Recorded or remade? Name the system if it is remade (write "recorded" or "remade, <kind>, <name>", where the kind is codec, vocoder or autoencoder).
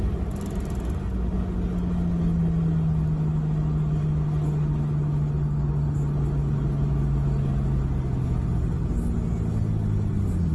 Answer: recorded